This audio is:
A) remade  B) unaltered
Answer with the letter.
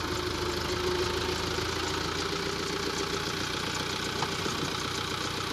B